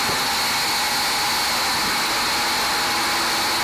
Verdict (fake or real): real